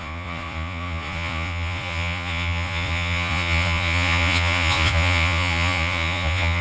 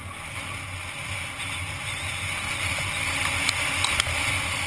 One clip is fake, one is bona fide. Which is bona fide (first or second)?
second